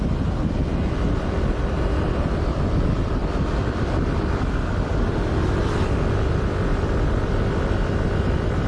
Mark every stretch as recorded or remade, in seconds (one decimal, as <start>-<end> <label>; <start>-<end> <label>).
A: 0.0-8.7 recorded